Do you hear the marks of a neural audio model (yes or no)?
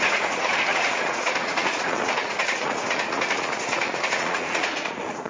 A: yes